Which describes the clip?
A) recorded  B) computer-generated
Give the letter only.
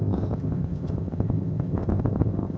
B